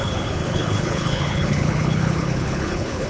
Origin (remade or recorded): remade